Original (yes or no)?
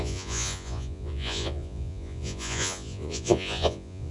no